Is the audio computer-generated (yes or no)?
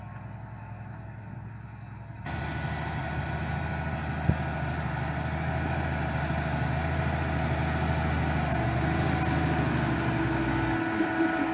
no